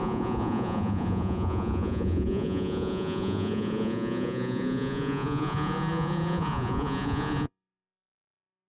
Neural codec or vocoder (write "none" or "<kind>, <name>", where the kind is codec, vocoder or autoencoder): vocoder, Vocos